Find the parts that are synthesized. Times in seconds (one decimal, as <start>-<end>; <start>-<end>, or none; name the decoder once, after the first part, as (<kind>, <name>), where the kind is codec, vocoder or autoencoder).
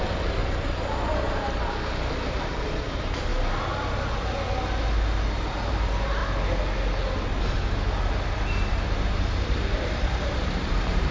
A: 0.0-0.4 (vocoder, BigVGAN v2); 1.1-3.3; 5.7-6.2; 8.7-11.1